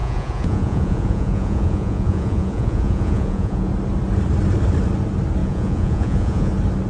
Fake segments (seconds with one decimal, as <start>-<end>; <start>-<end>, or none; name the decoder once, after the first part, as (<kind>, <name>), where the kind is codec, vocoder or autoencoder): 0.0-3.7 (vocoder, Vocos); 5.4-6.5